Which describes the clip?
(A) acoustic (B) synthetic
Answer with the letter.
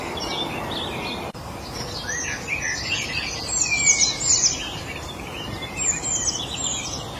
A